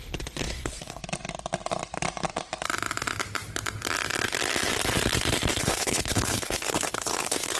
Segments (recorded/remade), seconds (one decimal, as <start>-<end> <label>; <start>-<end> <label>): 0.0-1.0 remade; 1.0-5.6 recorded; 5.6-7.6 remade

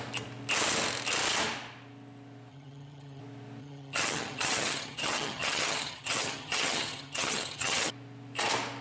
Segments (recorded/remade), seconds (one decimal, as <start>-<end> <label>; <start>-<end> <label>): 0.0-2.5 recorded; 2.5-3.2 remade; 3.2-3.6 recorded; 3.6-7.9 remade; 7.9-8.8 recorded

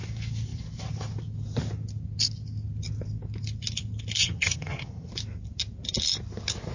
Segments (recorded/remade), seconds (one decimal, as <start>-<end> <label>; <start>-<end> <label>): 0.0-4.2 recorded; 4.2-5.1 remade; 5.1-6.7 recorded

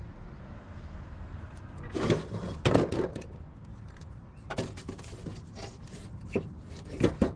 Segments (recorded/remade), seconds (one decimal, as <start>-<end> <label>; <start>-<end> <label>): 0.0-0.4 recorded; 0.4-1.8 remade; 1.8-7.4 recorded